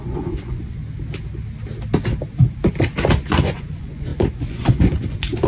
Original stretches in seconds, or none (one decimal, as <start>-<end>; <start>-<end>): 0.8-3.3